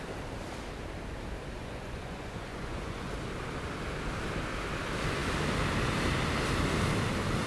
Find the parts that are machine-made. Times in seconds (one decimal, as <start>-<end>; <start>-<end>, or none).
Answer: 1.6-3.1